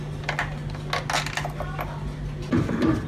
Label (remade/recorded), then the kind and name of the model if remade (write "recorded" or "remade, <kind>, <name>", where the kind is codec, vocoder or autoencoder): recorded